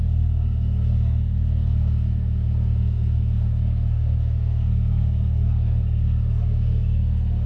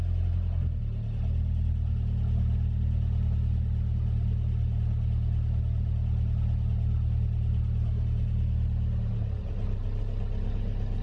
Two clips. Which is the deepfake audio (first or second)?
first